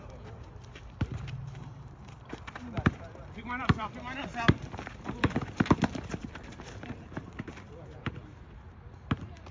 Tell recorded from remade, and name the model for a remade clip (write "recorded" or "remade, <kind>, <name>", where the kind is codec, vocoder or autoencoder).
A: remade, vocoder, BigVGAN v2